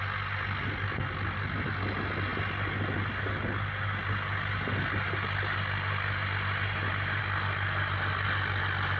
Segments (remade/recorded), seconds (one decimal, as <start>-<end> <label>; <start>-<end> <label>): 0.0-9.0 recorded